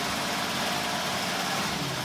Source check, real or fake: real